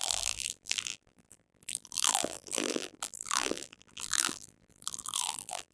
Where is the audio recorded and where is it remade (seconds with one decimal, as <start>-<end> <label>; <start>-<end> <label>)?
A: 0.0-5.7 remade